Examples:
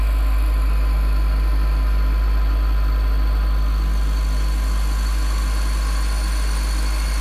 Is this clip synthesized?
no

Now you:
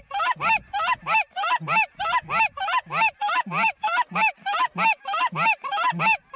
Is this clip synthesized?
no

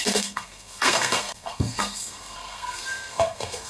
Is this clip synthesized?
yes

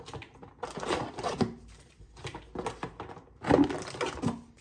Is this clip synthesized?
no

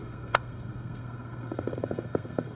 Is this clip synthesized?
yes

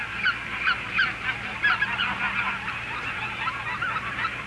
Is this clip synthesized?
no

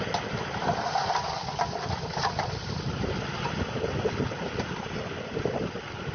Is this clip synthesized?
no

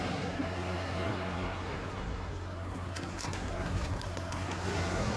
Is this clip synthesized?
yes